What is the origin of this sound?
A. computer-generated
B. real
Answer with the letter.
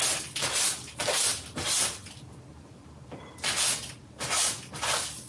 B